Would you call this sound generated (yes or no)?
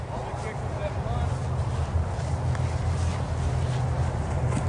no